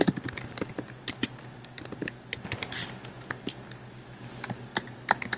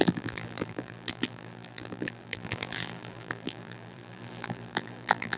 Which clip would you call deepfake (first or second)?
second